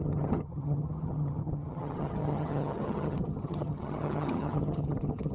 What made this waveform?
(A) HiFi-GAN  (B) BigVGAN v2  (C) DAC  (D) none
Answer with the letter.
A